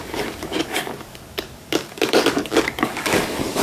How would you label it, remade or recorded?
remade